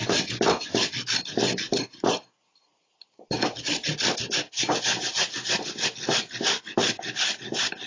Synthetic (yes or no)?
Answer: no